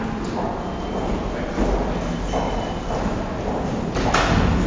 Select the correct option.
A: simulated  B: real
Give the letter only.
B